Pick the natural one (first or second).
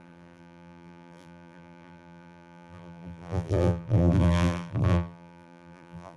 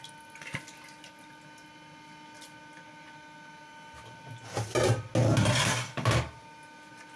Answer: second